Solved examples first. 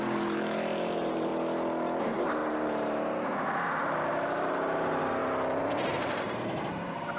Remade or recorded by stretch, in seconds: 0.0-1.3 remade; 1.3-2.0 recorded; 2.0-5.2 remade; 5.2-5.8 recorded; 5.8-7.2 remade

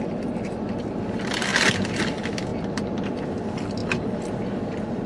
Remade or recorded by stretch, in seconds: 0.0-1.5 recorded; 1.5-2.0 remade; 2.0-2.5 recorded; 2.5-3.4 remade; 3.4-3.8 recorded; 3.8-5.1 remade

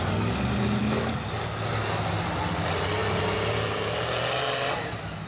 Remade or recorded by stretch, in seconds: 0.0-5.3 recorded

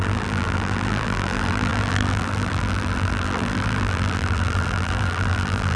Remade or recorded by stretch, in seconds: 0.0-5.8 remade

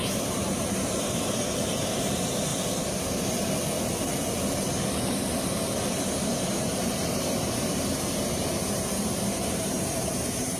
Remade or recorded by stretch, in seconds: 0.0-2.5 remade; 2.5-6.1 recorded; 6.1-10.6 remade

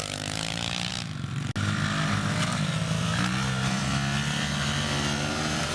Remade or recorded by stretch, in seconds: 0.0-0.9 remade; 0.9-3.0 recorded; 3.0-3.8 remade; 3.8-5.3 recorded; 5.3-5.7 remade

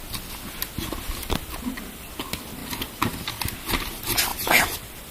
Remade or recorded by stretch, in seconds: 0.0-4.3 recorded; 4.3-5.1 remade